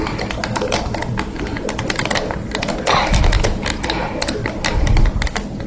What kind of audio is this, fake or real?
real